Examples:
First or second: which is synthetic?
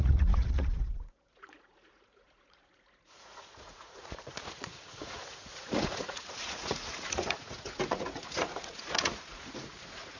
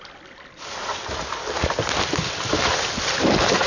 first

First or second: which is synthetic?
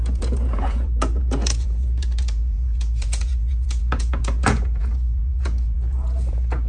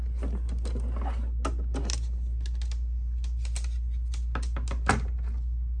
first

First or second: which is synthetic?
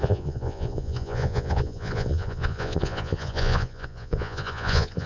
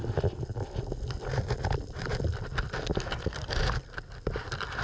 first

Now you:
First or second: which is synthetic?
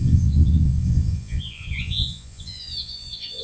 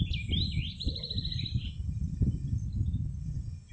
first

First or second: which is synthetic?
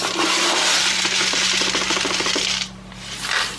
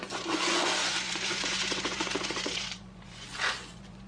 second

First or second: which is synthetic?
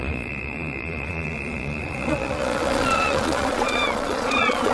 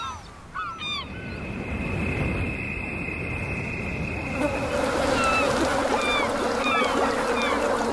first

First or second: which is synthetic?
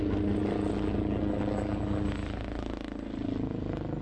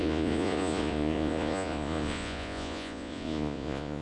second